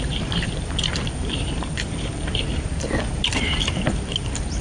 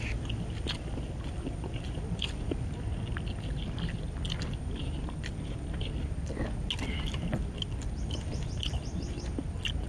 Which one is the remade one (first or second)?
first